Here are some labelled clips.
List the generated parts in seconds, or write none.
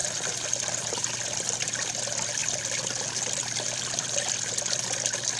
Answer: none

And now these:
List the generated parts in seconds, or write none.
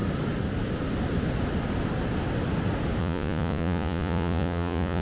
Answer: 3.0-5.0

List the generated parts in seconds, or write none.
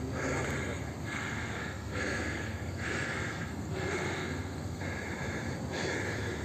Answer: 1.0-4.8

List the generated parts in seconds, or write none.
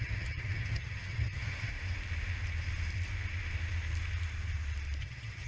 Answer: 0.0-1.7; 5.0-5.5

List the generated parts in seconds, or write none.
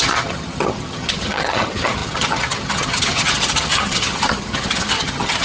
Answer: 0.0-5.4